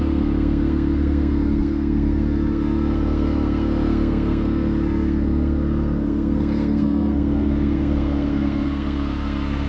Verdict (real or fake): fake